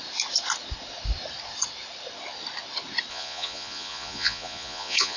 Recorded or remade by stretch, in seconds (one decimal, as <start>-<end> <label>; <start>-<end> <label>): 0.0-3.1 recorded; 3.1-5.2 remade